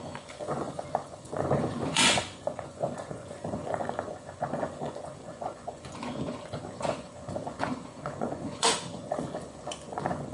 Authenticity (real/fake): fake